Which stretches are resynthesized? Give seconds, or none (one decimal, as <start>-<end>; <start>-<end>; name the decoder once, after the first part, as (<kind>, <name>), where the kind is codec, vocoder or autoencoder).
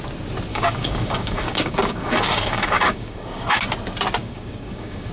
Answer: 0.5-3.6 (codec, DAC); 4.2-5.1